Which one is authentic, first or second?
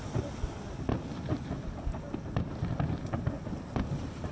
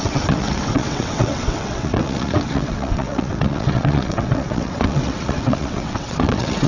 first